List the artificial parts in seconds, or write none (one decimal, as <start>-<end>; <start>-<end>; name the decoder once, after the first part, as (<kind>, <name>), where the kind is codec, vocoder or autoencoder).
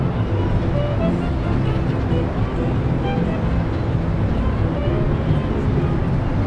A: none